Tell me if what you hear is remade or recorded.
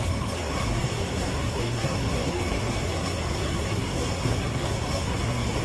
remade